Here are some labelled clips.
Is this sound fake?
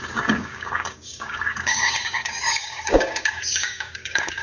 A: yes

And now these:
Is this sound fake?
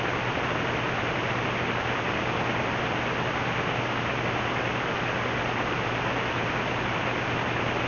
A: no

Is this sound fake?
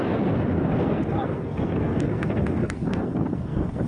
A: yes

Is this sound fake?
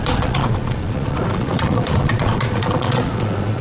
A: yes